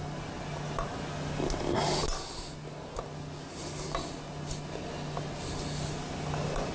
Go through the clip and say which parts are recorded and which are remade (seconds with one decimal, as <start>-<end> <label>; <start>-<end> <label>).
0.0-6.7 recorded